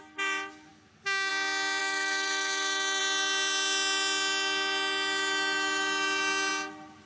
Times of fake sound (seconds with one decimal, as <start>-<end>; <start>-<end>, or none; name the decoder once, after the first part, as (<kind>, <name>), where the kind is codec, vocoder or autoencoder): 1.8-3.0 (autoencoder, DAC-VAE)